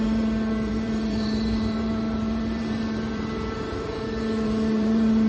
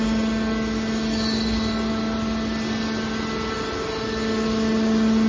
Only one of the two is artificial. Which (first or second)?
first